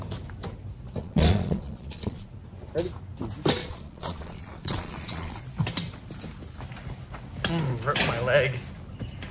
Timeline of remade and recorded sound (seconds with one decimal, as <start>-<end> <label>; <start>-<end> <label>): 0.0-1.0 recorded; 1.0-2.3 remade; 2.3-3.6 recorded; 3.6-5.4 remade; 5.4-9.3 recorded